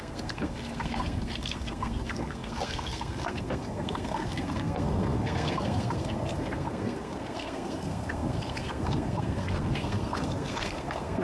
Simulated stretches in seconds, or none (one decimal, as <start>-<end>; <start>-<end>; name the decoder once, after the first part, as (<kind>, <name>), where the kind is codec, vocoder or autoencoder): 0.0-11.2 (codec, SNAC)